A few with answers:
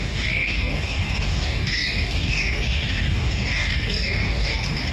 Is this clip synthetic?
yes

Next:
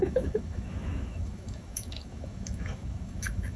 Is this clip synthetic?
yes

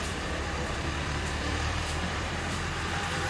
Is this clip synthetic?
yes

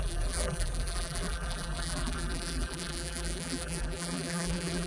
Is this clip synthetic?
yes